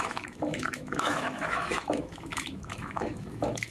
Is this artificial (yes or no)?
yes